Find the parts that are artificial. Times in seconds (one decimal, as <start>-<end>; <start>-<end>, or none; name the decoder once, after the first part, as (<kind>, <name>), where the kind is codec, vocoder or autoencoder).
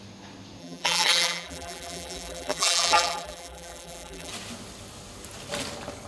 0.6-4.3 (vocoder, BigVGAN v2)